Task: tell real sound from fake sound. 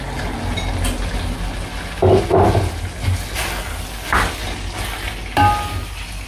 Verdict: real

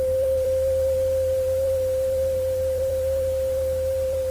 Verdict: fake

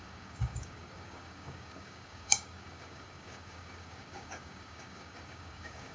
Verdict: fake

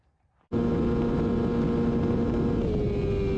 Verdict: real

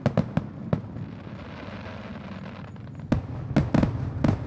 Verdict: real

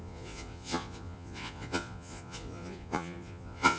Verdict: fake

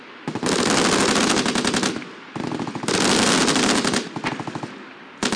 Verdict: real